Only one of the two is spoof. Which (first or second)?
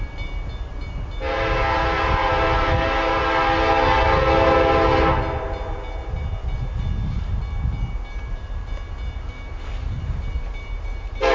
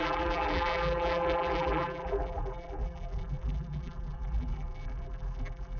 second